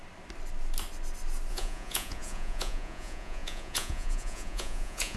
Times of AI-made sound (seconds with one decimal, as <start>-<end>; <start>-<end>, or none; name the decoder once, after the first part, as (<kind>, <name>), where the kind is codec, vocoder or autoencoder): 1.5-5.2 (vocoder, Vocos)